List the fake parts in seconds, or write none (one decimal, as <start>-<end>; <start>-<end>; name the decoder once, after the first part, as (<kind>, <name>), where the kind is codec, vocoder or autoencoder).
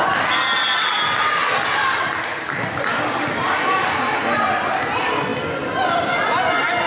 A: none